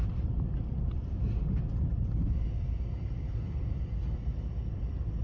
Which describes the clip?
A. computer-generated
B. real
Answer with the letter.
B